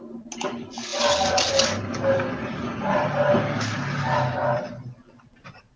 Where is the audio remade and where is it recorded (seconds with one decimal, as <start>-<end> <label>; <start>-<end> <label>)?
0.0-5.8 recorded